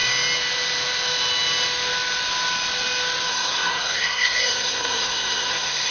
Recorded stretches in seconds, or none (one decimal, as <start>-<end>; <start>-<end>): 0.0-3.3